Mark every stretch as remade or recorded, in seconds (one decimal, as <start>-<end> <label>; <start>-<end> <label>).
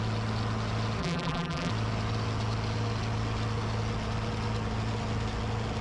0.0-1.0 recorded; 1.0-1.7 remade; 1.7-5.8 recorded